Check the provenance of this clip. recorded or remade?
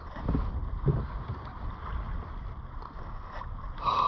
recorded